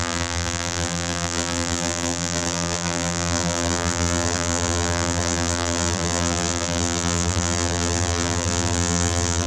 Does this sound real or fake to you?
fake